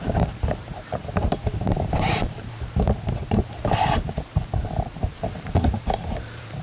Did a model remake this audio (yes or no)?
yes